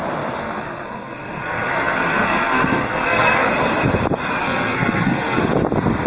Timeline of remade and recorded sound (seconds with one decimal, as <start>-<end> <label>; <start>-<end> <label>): 0.0-0.4 recorded; 0.4-3.5 remade; 3.5-4.4 recorded; 4.4-5.4 remade; 5.4-6.1 recorded